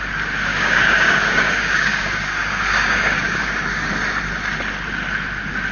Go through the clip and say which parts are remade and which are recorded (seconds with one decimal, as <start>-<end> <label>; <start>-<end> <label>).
0.0-0.5 recorded; 0.5-3.9 remade; 3.9-5.7 recorded